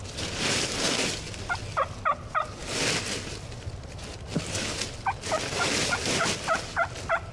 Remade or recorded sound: recorded